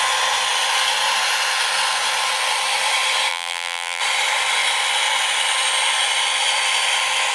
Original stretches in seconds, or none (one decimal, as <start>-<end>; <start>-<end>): 0.0-3.3; 4.0-7.3